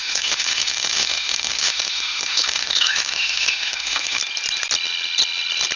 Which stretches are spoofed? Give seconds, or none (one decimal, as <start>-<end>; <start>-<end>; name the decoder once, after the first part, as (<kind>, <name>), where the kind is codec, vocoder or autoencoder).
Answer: 0.0-4.2 (autoencoder, DAC-VAE)